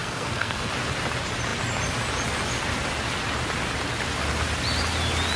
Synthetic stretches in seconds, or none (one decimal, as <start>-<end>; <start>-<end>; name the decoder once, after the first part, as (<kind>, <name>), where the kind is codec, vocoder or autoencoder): 0.0-0.7 (codec, SNAC)

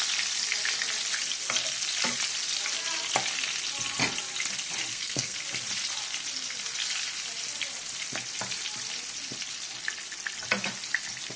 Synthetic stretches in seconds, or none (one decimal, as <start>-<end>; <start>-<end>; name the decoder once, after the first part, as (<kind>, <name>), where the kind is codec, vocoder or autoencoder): 4.9-5.4 (codec, SNAC)

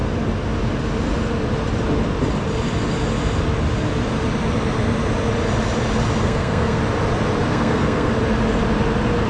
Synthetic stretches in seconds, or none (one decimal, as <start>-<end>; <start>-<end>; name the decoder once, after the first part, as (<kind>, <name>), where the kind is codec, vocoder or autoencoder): 6.2-6.8 (codec, SNAC); 7.5-8.1

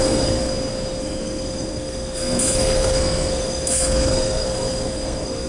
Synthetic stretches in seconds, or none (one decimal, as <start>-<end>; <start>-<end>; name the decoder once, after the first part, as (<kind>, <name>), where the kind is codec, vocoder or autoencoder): 0.0-0.5 (codec, SNAC); 1.0-5.5

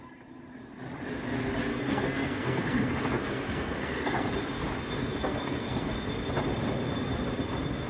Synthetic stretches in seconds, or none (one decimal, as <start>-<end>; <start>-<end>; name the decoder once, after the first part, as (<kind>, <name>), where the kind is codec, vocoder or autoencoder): 1.7-4.3 (codec, SNAC); 5.0-6.1